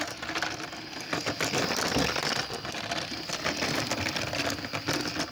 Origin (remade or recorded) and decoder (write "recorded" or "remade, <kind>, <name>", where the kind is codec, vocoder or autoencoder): recorded